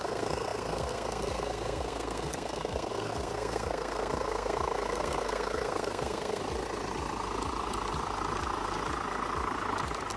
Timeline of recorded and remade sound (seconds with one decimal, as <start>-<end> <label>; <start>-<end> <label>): 0.0-6.4 remade; 6.4-10.2 recorded